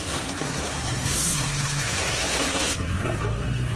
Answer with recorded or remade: remade